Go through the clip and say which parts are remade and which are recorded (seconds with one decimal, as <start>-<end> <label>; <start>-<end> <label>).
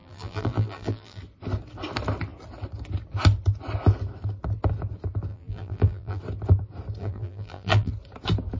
0.0-1.2 remade; 1.2-5.3 recorded; 5.3-6.2 remade; 6.2-7.0 recorded; 7.0-7.9 remade; 7.9-8.6 recorded